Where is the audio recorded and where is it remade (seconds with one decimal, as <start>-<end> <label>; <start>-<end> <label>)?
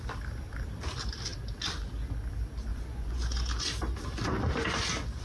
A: 0.0-2.7 recorded; 2.7-3.5 remade; 3.5-5.2 recorded